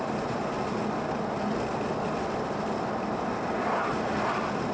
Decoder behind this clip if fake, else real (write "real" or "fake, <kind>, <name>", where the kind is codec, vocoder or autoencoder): real